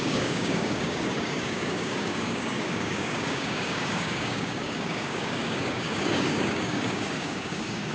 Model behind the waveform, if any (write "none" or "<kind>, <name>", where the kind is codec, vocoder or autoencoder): codec, DAC